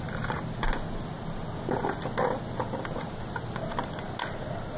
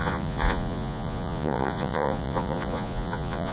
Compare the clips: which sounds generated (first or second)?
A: second